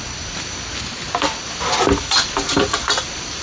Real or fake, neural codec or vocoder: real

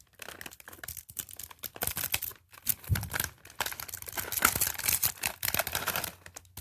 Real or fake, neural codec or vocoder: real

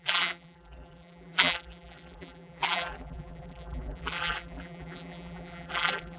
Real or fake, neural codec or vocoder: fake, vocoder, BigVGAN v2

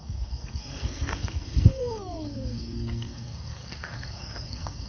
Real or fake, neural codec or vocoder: fake, codec, SNAC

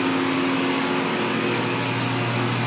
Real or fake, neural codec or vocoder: real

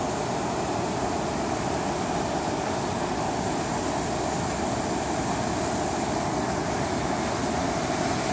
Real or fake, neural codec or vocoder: real